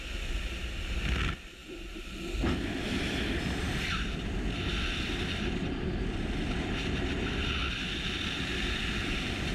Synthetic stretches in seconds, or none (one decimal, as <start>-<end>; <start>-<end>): none

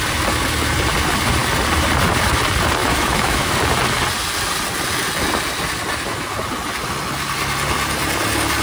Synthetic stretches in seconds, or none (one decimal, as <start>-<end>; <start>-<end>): 2.8-3.5

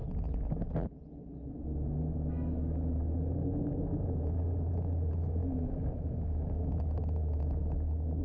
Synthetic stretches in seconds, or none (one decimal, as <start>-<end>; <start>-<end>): 1.5-8.2